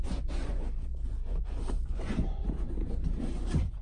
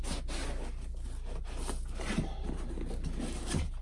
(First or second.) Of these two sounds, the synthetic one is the first